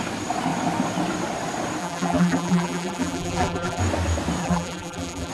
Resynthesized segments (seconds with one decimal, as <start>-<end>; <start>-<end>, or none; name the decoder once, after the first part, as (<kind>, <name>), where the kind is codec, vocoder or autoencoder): 1.8-3.8 (vocoder, BigVGAN v2); 4.4-5.3